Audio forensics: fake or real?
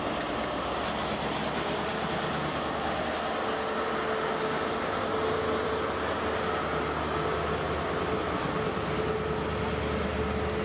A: real